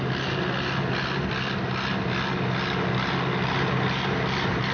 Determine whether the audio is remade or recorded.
recorded